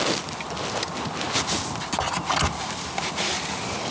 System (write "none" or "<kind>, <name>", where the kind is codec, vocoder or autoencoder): none